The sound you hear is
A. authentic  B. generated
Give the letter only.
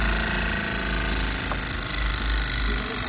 A